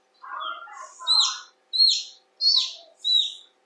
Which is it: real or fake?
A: real